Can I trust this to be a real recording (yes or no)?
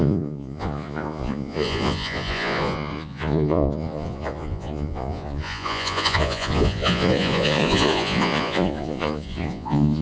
no